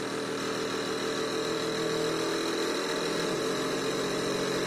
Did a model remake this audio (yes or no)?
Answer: no